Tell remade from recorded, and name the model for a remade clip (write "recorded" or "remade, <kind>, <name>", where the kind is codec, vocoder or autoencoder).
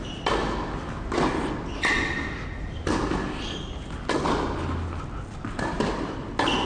recorded